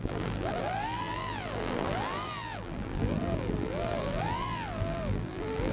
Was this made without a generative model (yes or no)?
no